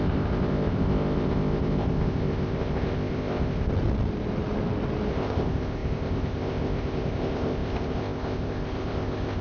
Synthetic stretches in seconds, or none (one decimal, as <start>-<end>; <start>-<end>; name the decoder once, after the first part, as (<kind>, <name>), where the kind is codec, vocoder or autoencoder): 0.0-3.7 (codec, ZipCodec); 5.1-9.4